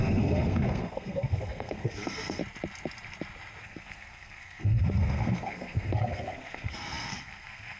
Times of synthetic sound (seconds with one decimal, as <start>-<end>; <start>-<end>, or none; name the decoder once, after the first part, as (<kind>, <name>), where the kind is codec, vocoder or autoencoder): 0.0-2.4 (codec, SNAC); 3.6-7.8